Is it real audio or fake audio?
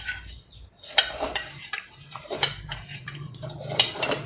fake